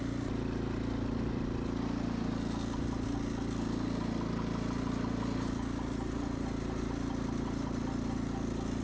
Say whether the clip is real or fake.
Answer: real